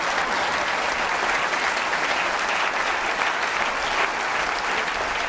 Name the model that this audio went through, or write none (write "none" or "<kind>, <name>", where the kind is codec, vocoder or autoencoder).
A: none